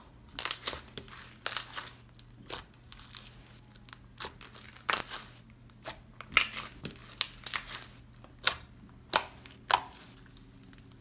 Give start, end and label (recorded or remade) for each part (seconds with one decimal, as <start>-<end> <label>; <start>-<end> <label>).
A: 0.0-11.0 recorded

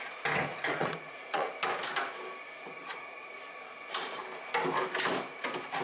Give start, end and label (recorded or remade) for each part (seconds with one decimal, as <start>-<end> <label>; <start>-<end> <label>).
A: 0.0-0.5 recorded; 0.5-1.5 remade; 1.5-2.8 recorded; 2.8-3.4 remade; 3.4-5.8 recorded

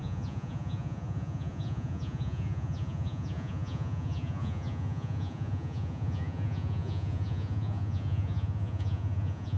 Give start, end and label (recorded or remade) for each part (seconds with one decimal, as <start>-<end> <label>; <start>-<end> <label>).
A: 0.0-9.6 remade

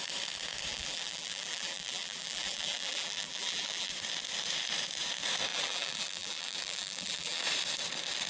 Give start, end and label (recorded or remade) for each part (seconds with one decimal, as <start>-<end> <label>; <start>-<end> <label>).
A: 0.0-0.7 recorded; 0.7-3.9 remade; 3.9-5.5 recorded; 5.5-7.4 remade; 7.4-8.3 recorded

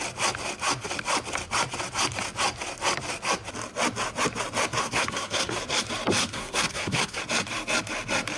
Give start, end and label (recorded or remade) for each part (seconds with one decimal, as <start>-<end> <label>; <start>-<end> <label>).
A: 0.0-4.8 recorded; 4.8-5.6 remade; 5.6-6.2 recorded; 6.2-7.2 remade; 7.2-8.4 recorded

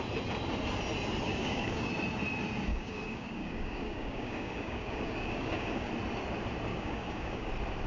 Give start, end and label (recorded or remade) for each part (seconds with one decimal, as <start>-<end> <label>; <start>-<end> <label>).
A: 0.0-1.3 recorded; 1.3-1.9 remade; 1.9-2.7 recorded; 2.7-5.9 remade; 5.9-6.7 recorded; 6.7-7.5 remade; 7.5-7.9 recorded

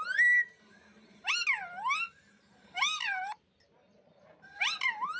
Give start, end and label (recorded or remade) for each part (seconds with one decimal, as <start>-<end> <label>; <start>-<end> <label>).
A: 0.0-5.2 recorded